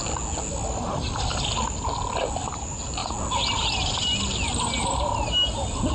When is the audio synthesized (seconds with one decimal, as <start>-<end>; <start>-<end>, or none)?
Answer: none